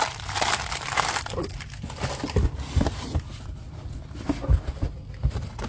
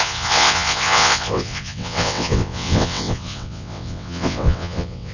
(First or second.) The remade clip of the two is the second